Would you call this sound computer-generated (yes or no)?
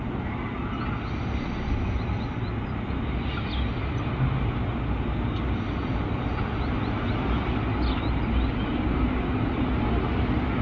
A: no